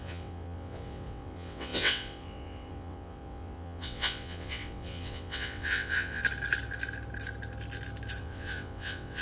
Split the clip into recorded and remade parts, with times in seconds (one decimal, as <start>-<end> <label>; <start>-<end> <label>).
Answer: 0.0-6.2 remade; 6.2-8.2 recorded; 8.2-9.2 remade